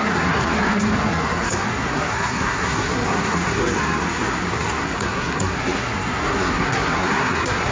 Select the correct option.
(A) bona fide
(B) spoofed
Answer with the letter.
B